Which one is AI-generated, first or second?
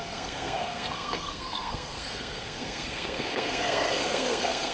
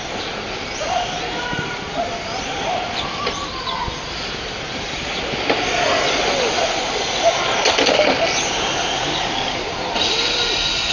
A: first